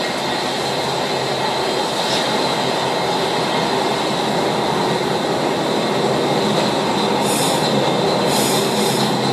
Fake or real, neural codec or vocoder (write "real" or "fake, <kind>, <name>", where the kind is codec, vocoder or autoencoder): real